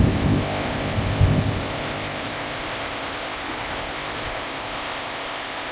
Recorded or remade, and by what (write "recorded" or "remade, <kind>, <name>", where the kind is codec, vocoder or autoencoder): remade, codec, ZipCodec